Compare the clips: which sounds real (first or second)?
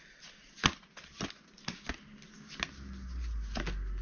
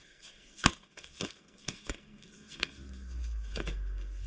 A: first